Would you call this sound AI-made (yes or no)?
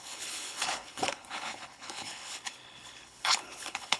yes